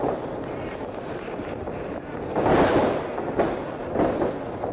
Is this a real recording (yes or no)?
yes